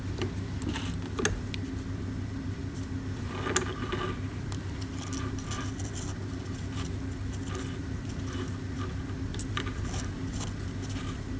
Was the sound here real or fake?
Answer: real